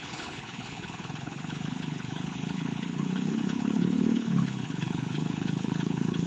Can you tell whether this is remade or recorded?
remade